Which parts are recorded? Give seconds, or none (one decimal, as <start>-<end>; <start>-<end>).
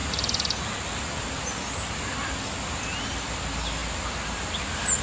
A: 0.0-5.0